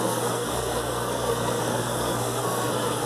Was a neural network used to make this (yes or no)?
yes